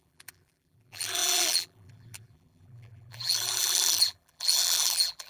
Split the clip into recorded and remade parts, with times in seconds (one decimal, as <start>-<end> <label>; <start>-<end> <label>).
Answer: 0.0-5.3 remade